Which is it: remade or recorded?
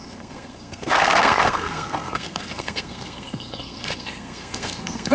remade